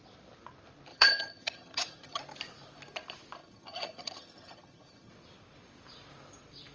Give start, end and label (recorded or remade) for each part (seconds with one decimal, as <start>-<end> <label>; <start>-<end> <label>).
0.0-0.9 recorded; 0.9-2.2 remade; 2.2-3.4 recorded; 3.4-5.1 remade; 5.1-6.7 recorded